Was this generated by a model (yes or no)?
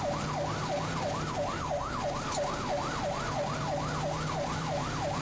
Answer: no